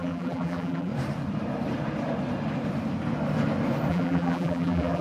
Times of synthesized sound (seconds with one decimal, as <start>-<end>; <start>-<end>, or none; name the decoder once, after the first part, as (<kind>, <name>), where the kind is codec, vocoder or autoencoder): 0.0-0.9 (vocoder, BigVGAN v2); 3.9-5.0

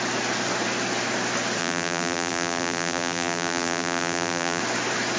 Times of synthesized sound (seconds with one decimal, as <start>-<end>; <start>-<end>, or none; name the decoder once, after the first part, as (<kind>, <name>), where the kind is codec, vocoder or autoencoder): 1.6-4.6 (vocoder, BigVGAN v2)